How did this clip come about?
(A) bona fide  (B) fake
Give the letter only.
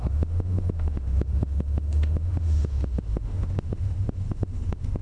B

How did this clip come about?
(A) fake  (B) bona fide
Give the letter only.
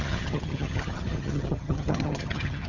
A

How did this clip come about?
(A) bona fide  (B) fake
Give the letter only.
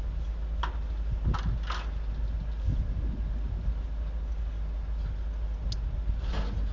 A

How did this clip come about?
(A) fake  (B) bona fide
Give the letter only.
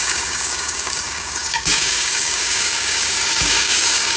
A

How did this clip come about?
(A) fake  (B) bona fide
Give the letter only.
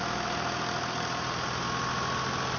B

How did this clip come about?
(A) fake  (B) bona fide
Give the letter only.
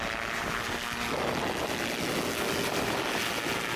B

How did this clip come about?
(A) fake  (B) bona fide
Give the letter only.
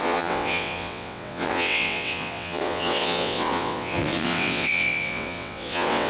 A